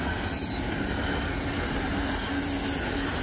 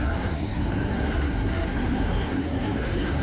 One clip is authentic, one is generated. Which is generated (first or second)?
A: second